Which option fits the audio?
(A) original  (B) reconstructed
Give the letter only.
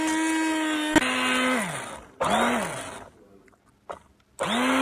A